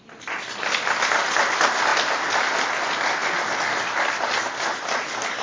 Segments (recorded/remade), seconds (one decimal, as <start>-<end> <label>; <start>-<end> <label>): 0.0-5.4 recorded